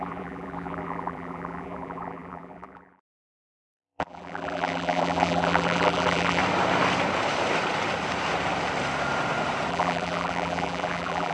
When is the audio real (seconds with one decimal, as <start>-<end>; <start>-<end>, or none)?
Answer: 6.4-9.7